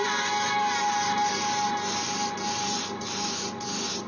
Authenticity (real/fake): real